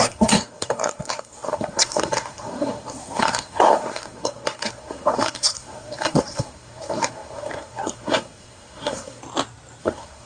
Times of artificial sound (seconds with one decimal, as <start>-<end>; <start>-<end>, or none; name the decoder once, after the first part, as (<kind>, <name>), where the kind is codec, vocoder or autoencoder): 0.0-9.2 (codec, SNAC); 9.8-10.3